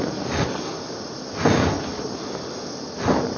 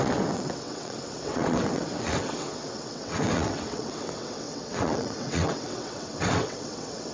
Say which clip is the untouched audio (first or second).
first